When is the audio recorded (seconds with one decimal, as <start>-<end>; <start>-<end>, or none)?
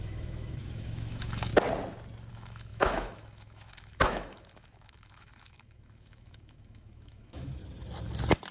1.5-2.3; 7.6-8.5